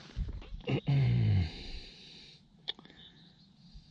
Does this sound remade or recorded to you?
remade